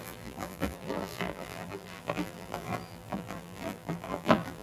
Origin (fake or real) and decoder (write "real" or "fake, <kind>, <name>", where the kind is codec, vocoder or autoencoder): fake, vocoder, BigVGAN v2